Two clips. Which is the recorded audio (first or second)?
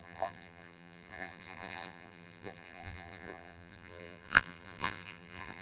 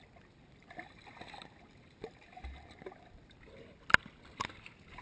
second